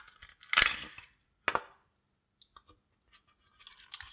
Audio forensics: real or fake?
real